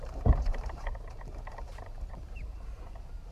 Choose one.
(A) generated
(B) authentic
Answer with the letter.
A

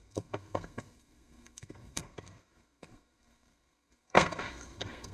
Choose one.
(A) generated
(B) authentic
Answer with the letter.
A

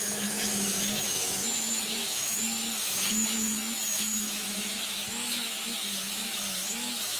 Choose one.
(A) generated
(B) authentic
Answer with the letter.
A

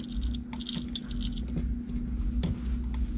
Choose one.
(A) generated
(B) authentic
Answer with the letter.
B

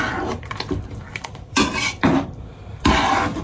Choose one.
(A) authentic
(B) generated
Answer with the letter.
B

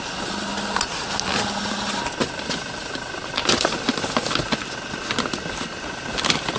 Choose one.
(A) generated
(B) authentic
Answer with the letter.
B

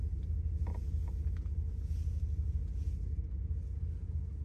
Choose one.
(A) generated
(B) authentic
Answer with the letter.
B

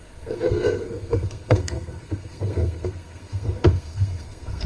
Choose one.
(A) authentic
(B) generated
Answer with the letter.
B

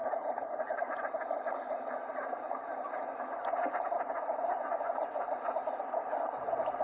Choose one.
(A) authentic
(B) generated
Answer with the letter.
A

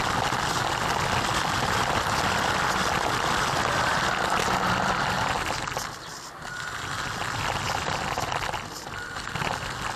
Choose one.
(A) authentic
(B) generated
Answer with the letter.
A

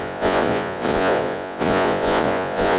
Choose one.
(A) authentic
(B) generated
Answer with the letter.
B